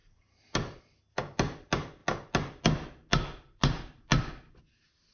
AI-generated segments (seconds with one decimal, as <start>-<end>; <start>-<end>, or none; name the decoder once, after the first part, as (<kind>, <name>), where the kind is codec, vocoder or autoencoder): none